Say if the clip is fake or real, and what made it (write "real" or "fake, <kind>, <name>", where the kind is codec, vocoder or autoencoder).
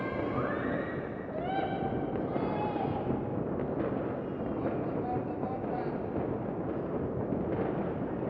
real